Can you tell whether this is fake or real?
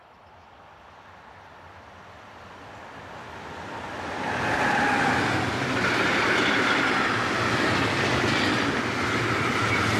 real